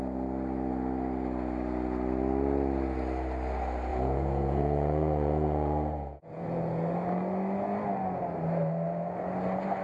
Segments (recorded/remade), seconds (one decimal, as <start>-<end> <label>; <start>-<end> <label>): 0.0-3.9 recorded; 3.9-6.6 remade; 6.6-9.8 recorded